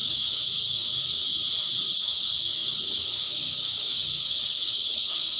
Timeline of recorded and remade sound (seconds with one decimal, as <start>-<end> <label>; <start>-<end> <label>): 0.0-1.4 remade; 1.4-2.0 recorded; 2.0-5.4 remade